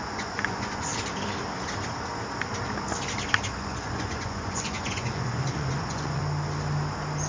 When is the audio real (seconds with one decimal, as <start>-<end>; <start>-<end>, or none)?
0.9-3.5; 6.2-7.3